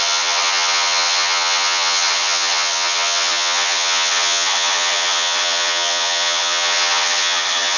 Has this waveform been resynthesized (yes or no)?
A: yes